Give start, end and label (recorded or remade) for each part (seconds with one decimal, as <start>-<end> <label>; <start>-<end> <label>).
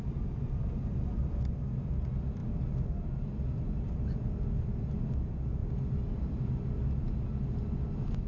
0.0-8.3 recorded